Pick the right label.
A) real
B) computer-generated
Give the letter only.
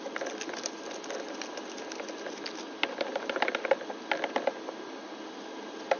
A